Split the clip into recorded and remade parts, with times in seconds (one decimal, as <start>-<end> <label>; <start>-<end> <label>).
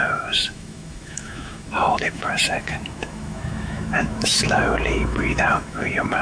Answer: 0.0-6.2 remade